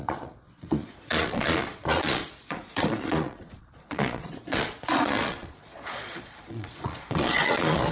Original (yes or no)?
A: no